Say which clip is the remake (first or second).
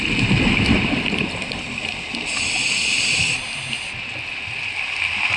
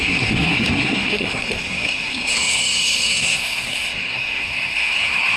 second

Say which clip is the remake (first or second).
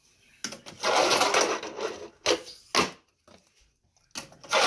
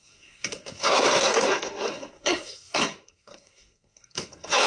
second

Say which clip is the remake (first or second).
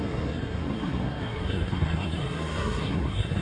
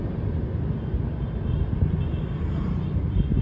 first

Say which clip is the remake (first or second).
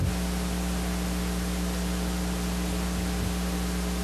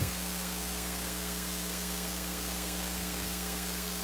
second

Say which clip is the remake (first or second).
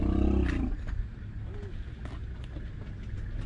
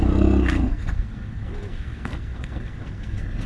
second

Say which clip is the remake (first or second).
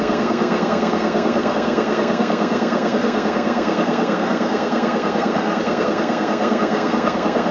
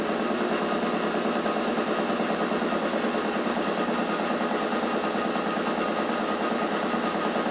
first